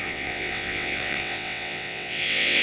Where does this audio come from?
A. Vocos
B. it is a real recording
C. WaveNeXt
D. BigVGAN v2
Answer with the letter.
C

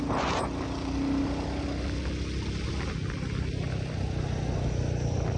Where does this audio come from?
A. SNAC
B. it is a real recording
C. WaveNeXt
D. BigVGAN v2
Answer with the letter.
B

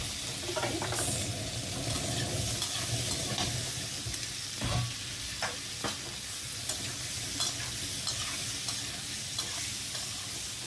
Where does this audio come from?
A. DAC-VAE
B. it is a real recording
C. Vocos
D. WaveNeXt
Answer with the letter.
B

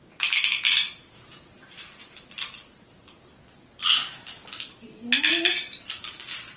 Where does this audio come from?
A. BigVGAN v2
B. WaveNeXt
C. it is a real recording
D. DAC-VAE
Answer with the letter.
C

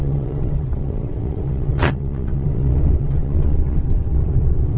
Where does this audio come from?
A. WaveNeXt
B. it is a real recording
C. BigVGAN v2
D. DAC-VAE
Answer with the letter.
A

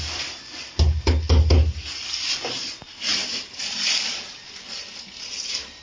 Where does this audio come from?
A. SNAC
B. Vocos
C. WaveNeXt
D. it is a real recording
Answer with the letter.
D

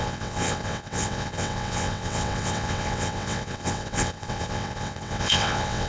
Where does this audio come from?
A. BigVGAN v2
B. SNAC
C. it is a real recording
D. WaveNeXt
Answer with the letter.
D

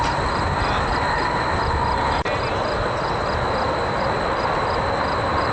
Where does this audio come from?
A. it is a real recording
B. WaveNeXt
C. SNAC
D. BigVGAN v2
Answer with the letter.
A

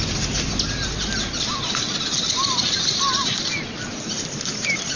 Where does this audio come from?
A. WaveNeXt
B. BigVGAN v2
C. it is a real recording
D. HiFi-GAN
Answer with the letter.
C